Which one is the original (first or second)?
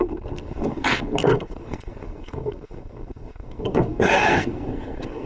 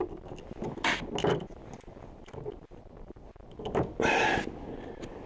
second